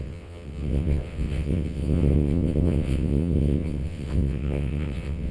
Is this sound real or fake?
fake